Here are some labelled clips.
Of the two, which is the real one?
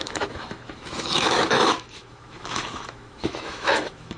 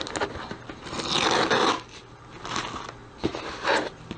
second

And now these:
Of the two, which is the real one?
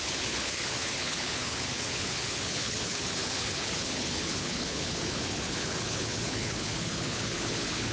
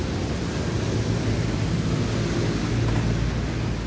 second